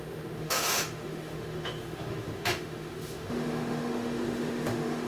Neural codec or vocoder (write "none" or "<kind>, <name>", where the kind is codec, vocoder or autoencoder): autoencoder, DAC-VAE